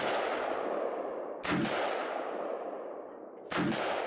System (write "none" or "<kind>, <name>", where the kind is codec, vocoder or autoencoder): none